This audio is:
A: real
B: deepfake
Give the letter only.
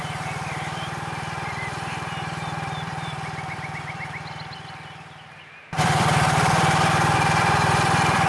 B